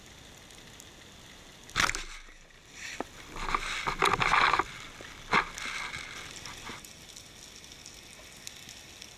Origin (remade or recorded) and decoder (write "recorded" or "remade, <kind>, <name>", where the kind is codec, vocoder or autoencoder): recorded